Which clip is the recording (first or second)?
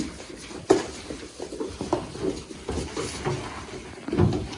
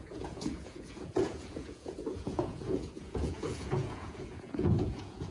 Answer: first